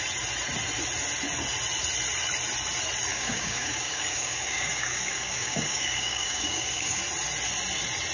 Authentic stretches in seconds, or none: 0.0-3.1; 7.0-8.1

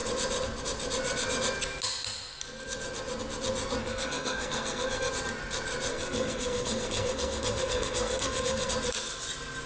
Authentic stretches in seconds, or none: 0.0-3.8; 5.1-5.9; 8.7-9.7

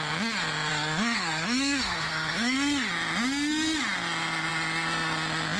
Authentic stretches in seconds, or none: 0.0-0.7; 2.9-5.6

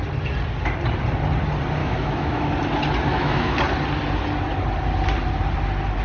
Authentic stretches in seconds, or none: 0.0-1.8; 2.5-3.1; 3.6-6.0

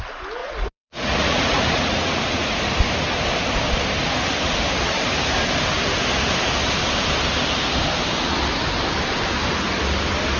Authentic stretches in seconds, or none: 0.0-0.4; 2.6-10.4

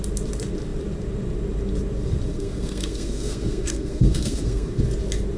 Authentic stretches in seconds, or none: 0.0-2.3; 4.8-5.4

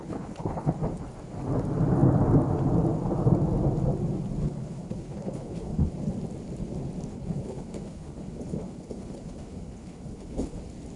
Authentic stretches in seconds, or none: 0.7-4.4; 5.9-7.1; 10.6-11.0